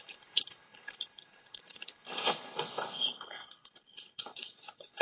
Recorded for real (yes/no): no